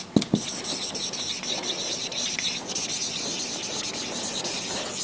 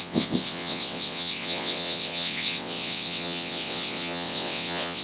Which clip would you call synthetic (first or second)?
second